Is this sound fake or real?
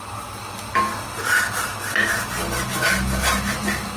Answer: real